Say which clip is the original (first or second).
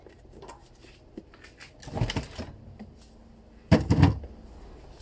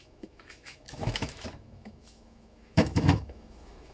first